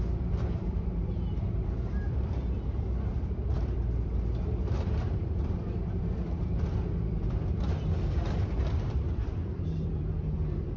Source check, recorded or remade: remade